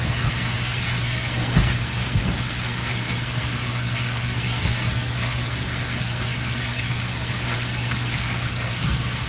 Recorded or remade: remade